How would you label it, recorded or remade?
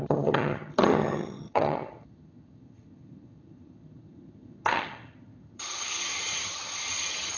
remade